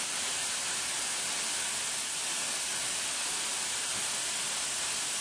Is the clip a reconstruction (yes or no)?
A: no